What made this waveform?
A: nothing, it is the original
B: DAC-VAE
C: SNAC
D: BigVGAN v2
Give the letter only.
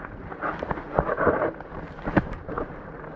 D